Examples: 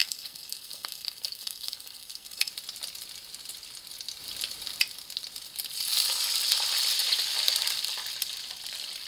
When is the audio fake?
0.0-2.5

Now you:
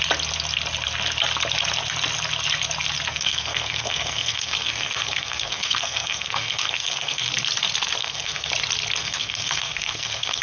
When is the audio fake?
3.1-7.3; 8.0-8.5; 9.0-10.4

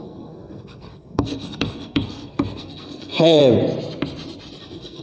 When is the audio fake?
0.0-3.4; 4.6-5.0

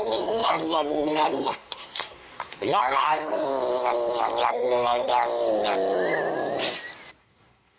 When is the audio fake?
0.0-3.5; 4.5-5.1; 7.2-7.8